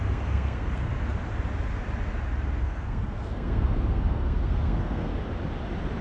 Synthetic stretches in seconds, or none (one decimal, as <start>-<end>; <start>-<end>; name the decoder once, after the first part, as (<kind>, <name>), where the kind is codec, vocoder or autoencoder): 0.0-0.9 (codec, SNAC); 2.6-5.1